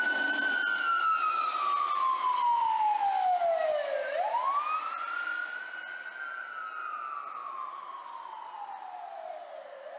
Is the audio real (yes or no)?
yes